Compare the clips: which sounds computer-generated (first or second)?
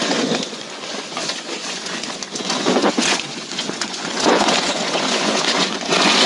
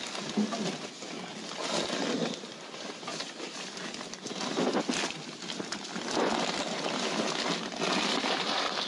first